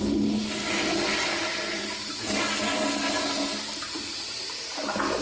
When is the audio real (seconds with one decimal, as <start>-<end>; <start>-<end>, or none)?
0.0-5.2